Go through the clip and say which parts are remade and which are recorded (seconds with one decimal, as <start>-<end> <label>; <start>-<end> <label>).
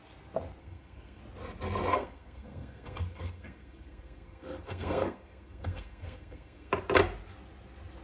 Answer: 0.0-0.6 recorded; 0.6-1.2 remade; 1.2-1.9 recorded; 1.9-6.7 remade; 6.7-8.0 recorded